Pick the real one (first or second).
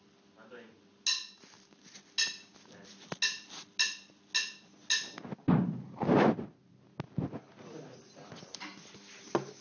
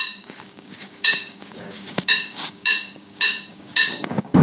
first